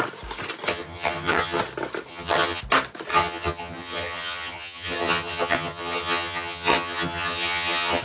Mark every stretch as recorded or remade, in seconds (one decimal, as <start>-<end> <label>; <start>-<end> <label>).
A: 0.0-0.7 recorded; 0.7-1.6 remade; 1.6-2.1 recorded; 2.1-2.6 remade; 2.6-3.1 recorded; 3.1-8.0 remade